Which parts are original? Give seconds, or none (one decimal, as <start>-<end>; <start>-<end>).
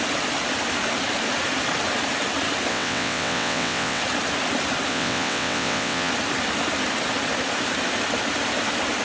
0.0-2.7; 4.0-4.9; 6.1-9.0